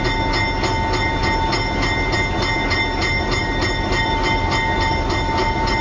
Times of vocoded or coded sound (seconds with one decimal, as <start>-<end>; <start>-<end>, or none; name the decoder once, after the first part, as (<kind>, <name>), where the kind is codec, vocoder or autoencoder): none